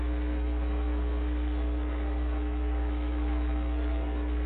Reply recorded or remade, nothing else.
remade